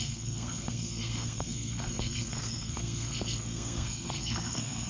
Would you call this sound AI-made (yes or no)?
yes